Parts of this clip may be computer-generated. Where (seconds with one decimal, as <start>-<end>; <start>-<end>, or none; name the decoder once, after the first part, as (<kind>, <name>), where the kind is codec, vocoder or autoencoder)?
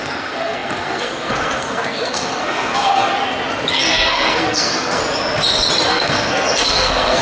0.0-3.1 (codec, SNAC); 3.7-5.0; 5.9-7.2